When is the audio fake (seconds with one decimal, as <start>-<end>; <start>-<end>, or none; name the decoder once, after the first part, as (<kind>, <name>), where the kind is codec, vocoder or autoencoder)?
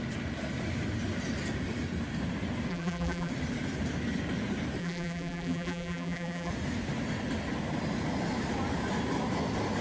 2.7-3.3 (vocoder, BigVGAN v2); 4.8-6.5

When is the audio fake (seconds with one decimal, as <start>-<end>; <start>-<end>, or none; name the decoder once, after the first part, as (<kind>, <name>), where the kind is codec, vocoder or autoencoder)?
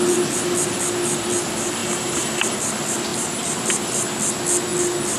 1.8-2.6 (vocoder, BigVGAN v2)